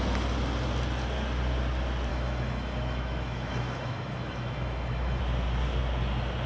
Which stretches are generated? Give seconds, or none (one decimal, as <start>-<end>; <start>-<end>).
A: 2.1-5.2